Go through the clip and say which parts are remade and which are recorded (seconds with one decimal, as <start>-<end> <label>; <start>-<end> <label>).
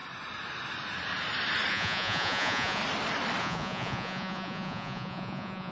0.0-1.7 recorded; 1.7-2.8 remade; 2.8-3.4 recorded; 3.4-5.7 remade